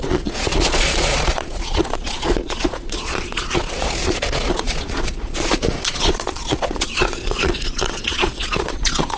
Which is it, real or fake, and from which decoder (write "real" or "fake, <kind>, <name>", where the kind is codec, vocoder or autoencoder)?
fake, vocoder, Vocos